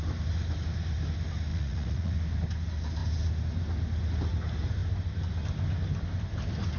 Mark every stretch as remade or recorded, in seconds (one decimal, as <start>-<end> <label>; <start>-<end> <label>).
0.0-1.5 recorded; 1.5-2.1 remade; 2.1-6.8 recorded